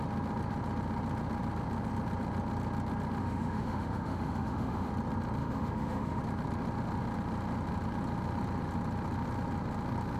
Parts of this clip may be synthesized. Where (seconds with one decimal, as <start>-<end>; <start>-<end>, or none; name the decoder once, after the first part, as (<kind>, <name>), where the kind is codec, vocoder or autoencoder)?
3.2-4.9 (autoencoder, DAC-VAE); 5.4-6.2